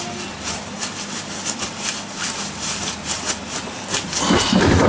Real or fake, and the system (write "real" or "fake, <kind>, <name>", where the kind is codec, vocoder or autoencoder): real